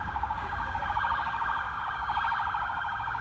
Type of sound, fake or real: fake